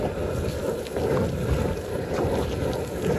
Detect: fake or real fake